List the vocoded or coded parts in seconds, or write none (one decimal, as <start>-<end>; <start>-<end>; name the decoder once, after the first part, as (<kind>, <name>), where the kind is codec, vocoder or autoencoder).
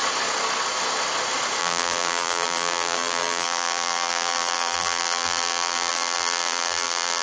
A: 1.6-7.2 (vocoder, BigVGAN v2)